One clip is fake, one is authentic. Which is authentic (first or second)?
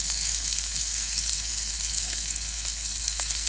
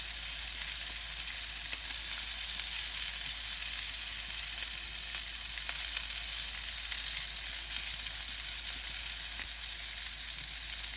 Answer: second